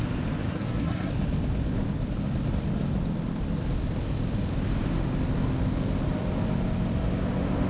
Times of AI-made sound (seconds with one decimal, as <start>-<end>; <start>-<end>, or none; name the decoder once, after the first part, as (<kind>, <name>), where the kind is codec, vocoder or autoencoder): 0.5-1.1 (codec, SNAC)